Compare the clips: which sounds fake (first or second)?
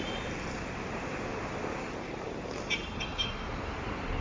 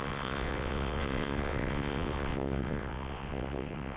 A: second